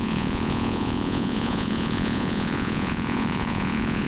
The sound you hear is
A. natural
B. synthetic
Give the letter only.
B